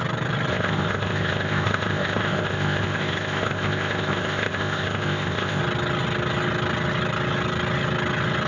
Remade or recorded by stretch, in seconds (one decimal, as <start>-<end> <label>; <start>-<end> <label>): 0.0-0.5 recorded; 0.5-5.6 remade; 5.6-8.5 recorded